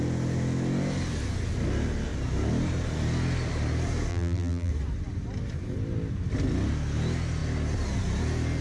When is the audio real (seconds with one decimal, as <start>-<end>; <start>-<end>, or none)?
0.0-4.1; 4.7-8.6